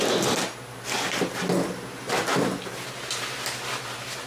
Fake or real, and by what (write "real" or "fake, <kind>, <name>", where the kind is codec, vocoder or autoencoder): real